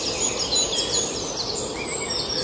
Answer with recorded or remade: recorded